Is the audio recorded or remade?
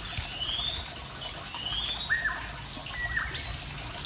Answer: recorded